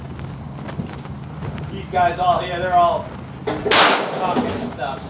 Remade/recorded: recorded